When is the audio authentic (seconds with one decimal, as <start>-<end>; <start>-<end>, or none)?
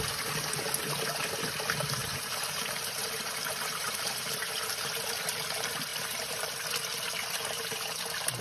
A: 0.0-2.0; 4.9-5.9; 6.5-8.4